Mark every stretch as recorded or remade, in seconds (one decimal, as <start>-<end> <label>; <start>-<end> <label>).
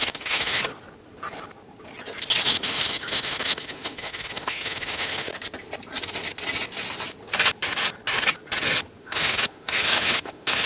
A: 0.0-0.6 remade; 0.6-2.5 recorded; 2.5-5.3 remade; 5.3-9.0 recorded; 9.0-10.7 remade